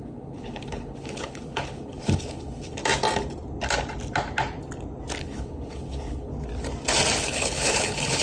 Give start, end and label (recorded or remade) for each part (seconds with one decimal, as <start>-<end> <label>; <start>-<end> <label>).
0.0-2.8 remade; 2.8-5.2 recorded; 5.2-6.3 remade; 6.3-7.2 recorded; 7.2-8.2 remade